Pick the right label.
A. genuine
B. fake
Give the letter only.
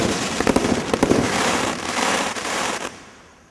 B